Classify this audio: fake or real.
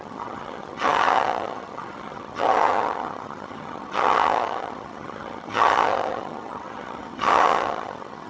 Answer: fake